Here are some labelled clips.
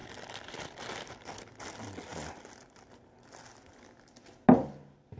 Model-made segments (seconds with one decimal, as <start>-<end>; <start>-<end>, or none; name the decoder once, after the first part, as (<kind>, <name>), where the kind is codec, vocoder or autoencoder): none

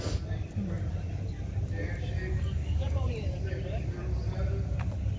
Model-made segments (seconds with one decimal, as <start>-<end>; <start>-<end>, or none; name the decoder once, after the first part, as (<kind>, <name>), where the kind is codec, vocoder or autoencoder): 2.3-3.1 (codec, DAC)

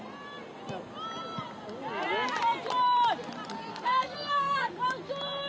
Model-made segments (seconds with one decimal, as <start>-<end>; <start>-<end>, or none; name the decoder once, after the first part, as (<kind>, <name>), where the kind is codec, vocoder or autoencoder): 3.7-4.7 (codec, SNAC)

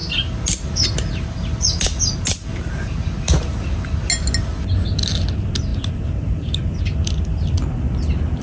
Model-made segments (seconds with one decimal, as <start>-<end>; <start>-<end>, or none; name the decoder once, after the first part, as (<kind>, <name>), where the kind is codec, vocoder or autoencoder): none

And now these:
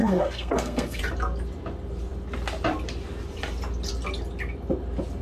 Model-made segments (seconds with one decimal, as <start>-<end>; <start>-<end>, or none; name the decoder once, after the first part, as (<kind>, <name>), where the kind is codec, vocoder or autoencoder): 0.0-1.0 (codec, SNAC)

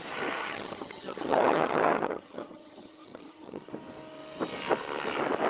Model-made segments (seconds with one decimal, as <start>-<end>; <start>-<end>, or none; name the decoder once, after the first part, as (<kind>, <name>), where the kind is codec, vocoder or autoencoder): 0.4-3.7 (vocoder, HiFi-GAN)

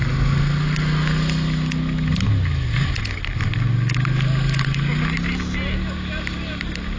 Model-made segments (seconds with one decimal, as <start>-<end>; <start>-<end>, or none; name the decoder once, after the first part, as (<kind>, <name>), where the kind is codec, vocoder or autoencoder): none